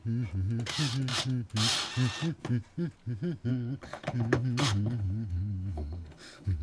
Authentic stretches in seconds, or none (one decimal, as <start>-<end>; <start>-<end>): 0.0-3.5